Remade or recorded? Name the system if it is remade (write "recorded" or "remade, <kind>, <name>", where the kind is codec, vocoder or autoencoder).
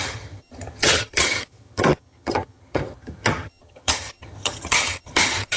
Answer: remade, vocoder, HiFi-GAN